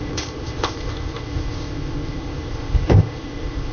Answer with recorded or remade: remade